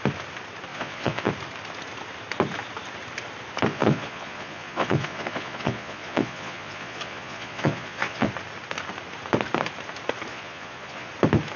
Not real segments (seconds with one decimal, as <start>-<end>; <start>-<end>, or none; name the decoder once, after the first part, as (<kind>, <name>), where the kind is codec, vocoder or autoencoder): 0.7-1.3 (vocoder, Vocos); 3.7-8.3; 10.3-11.1